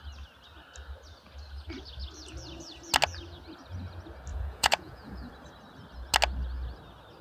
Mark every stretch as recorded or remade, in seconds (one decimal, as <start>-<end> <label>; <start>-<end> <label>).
0.0-4.3 recorded; 4.3-5.3 remade; 5.3-7.2 recorded